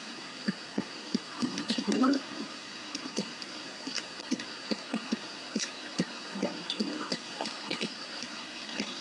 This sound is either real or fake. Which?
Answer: fake